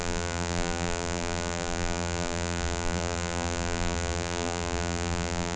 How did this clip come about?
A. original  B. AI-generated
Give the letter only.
B